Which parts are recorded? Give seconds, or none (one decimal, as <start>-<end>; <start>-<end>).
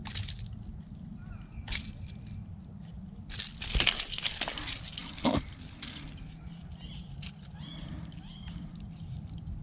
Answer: 0.0-9.6